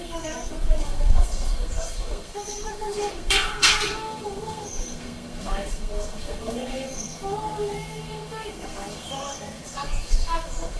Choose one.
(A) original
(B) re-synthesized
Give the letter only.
B